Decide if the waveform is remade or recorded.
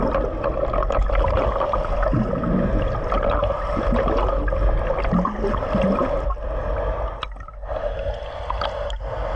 recorded